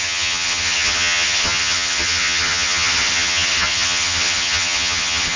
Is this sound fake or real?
fake